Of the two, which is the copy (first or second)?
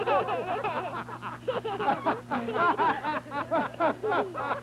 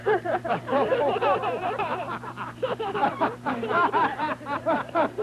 second